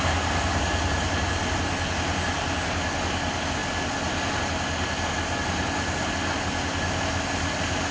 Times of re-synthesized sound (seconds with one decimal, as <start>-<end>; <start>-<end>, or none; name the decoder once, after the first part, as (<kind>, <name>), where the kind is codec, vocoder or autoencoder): none